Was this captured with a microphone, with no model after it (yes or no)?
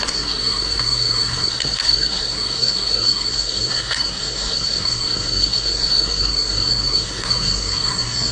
no